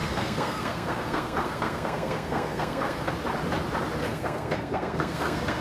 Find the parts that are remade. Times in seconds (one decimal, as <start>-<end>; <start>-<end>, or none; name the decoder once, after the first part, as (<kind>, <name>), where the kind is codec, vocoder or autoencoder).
0.0-3.1 (codec, SNAC); 4.0-5.6